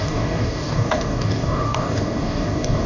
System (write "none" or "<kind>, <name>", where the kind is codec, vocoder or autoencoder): codec, DAC